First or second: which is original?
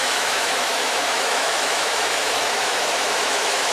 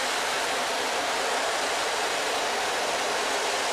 second